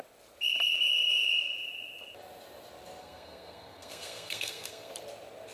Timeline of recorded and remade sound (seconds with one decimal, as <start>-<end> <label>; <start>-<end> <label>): 0.0-3.0 recorded; 3.0-4.9 remade; 4.9-5.5 recorded